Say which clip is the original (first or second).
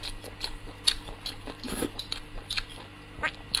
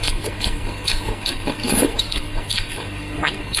first